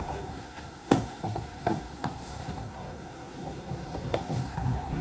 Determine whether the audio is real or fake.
fake